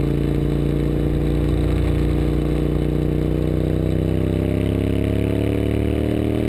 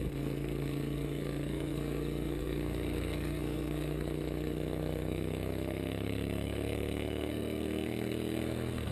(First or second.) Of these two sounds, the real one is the first